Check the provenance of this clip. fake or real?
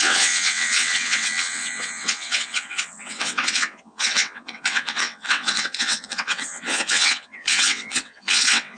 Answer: fake